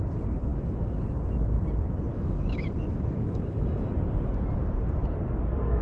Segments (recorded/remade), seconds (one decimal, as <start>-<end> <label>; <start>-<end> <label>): 0.0-0.5 recorded; 0.5-1.0 remade; 1.0-2.1 recorded; 2.1-3.9 remade; 3.9-5.8 recorded